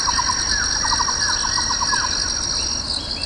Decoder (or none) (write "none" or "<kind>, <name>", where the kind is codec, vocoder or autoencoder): none